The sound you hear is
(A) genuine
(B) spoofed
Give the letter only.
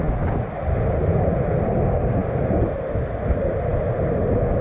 A